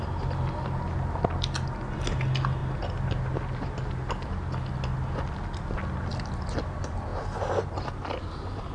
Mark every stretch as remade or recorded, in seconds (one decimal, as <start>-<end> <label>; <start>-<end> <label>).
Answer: 0.0-8.7 recorded